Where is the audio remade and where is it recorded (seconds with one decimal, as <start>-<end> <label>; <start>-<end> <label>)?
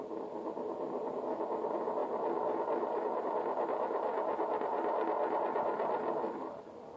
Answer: 0.0-7.0 recorded